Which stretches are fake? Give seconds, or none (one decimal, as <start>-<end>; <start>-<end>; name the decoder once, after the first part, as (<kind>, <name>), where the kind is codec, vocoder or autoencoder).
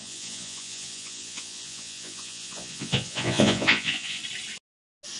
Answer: 0.0-4.2 (vocoder, Vocos)